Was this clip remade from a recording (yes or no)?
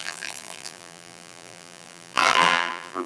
yes